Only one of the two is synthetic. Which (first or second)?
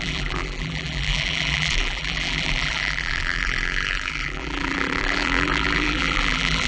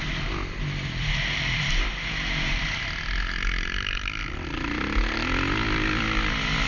first